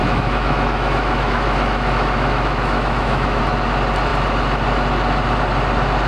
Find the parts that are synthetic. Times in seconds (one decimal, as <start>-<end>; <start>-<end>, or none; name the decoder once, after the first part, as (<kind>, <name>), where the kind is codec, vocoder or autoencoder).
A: 0.0-3.4 (autoencoder, DAC-VAE)